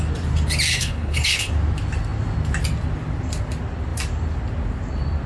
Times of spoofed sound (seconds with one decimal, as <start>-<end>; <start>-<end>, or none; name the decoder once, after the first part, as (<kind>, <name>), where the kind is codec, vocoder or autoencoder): 0.7-1.5 (codec, HILCodec)